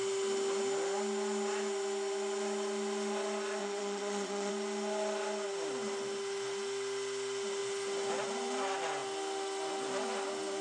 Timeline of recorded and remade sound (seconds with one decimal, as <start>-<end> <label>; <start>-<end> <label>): 0.0-3.6 recorded; 3.6-4.5 remade; 4.5-10.6 recorded